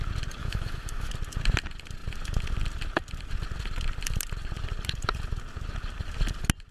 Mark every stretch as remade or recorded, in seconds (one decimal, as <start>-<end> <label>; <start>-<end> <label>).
0.0-0.4 recorded; 0.4-1.1 remade; 1.1-6.7 recorded

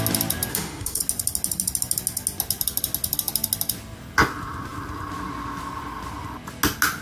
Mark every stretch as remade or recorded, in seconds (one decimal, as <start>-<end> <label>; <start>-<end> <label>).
0.0-0.5 recorded; 0.5-1.0 remade; 1.0-7.0 recorded